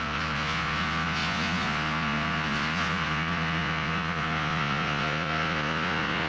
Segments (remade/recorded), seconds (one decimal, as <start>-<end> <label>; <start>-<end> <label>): 0.0-6.3 remade

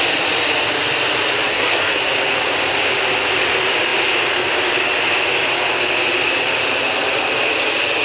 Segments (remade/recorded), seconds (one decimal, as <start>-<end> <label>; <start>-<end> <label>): 0.0-1.5 recorded; 1.5-2.0 remade; 2.0-8.0 recorded

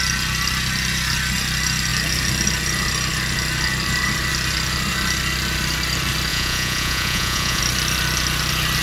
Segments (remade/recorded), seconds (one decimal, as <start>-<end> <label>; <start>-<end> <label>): 0.0-6.3 recorded; 6.3-7.6 remade; 7.6-8.8 recorded

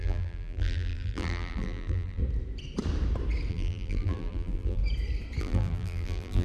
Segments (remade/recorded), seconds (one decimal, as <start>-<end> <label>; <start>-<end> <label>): 0.0-2.2 remade; 2.2-3.5 recorded; 3.5-4.8 remade; 4.8-5.4 recorded; 5.4-6.4 remade